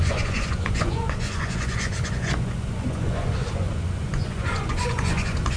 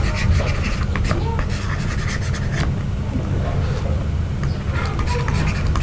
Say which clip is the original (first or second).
second